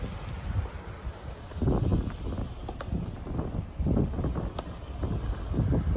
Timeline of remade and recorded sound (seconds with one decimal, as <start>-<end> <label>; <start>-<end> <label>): 0.0-6.0 recorded